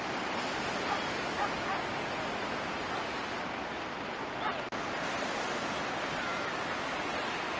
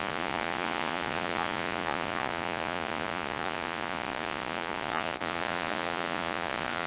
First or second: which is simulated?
second